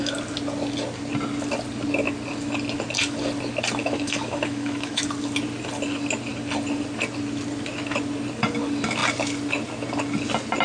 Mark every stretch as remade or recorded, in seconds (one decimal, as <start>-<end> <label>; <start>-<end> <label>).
0.0-3.8 recorded; 3.8-5.0 remade; 5.0-10.6 recorded